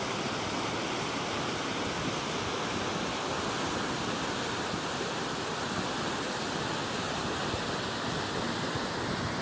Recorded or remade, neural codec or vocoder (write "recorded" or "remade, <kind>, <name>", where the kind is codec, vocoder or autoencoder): recorded